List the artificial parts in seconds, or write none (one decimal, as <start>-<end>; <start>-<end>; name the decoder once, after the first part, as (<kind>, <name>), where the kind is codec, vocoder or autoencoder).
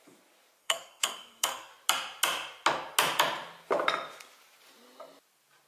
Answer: 0.6-1.7 (codec, SNAC)